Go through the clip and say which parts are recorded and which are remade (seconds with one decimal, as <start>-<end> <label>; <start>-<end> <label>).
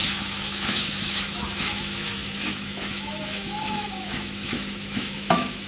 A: 0.0-5.7 remade